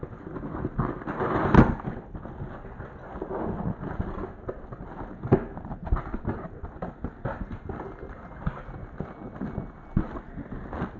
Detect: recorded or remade recorded